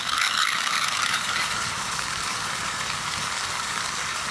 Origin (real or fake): fake